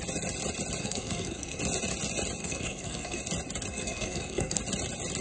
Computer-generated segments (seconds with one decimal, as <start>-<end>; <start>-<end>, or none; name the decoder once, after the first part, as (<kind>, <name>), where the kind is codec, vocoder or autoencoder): 0.8-1.6 (codec, SNAC); 2.4-3.2; 3.7-4.6